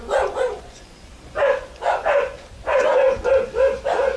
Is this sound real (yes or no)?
no